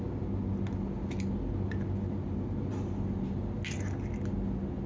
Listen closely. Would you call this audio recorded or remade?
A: recorded